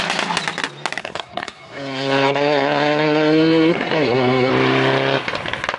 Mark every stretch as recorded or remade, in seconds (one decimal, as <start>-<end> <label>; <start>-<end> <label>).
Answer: 0.0-1.0 recorded; 1.0-4.5 remade; 4.5-5.8 recorded